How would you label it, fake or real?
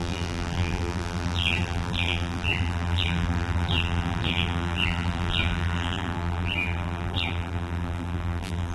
fake